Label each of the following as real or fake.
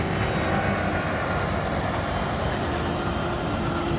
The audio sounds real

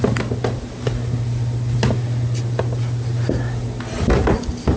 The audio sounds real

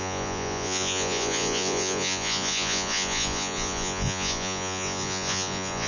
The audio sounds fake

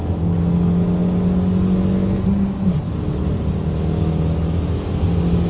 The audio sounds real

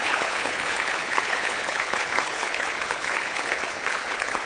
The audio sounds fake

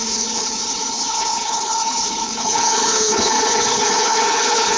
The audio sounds fake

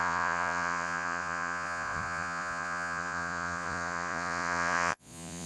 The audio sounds fake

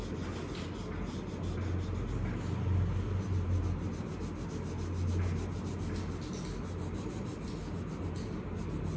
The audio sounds real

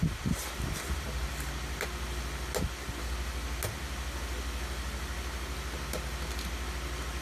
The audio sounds real